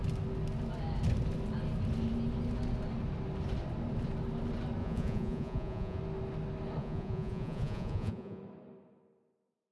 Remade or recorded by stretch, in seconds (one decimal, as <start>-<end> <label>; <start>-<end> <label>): 0.0-4.8 recorded; 4.8-6.0 remade; 6.0-6.8 recorded; 6.8-8.4 remade; 8.4-9.7 recorded